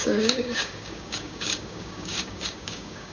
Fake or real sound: fake